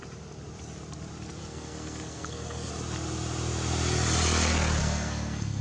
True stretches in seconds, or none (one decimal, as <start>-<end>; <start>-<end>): 0.0-1.4; 2.7-4.8